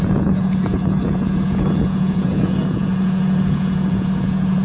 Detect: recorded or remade remade